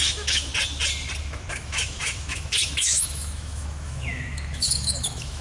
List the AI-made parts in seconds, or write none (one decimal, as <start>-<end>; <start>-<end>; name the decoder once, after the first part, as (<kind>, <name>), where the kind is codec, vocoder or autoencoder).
0.0-0.5 (autoencoder, DAC-VAE); 1.2-5.4